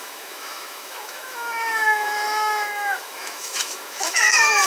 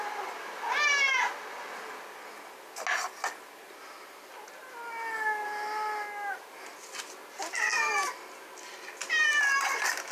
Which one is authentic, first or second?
second